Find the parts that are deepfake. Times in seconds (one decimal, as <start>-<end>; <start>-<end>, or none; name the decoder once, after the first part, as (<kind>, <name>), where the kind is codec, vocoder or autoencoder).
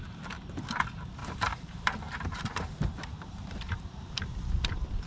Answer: 1.2-4.2 (vocoder, BigVGAN v2)